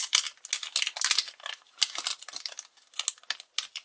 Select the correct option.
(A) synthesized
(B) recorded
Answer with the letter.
B